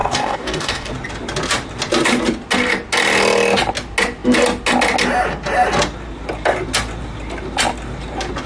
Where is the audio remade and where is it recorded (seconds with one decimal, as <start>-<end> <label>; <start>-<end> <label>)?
0.0-0.9 remade; 0.9-8.5 recorded